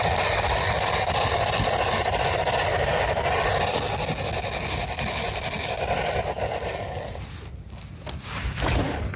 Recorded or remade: recorded